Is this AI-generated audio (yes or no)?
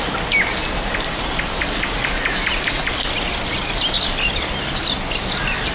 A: no